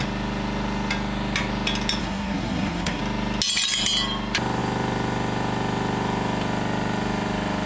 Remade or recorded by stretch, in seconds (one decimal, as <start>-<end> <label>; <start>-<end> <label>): 0.0-2.0 recorded; 2.0-3.0 remade; 3.0-7.7 recorded